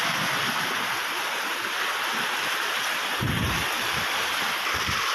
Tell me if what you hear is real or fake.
real